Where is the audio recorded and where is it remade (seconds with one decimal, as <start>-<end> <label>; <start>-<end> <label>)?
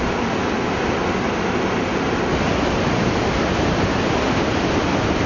0.0-5.3 recorded